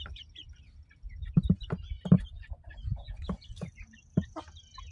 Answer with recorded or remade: remade